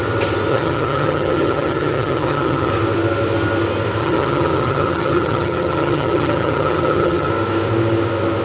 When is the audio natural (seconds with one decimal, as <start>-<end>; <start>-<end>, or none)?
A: 0.0-0.5; 2.7-4.0; 7.3-8.4